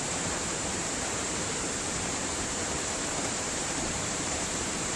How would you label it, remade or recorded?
remade